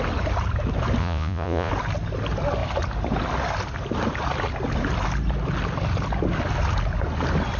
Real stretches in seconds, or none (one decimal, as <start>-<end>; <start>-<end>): 0.0-1.0; 1.7-7.6